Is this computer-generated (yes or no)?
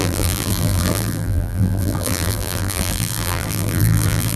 yes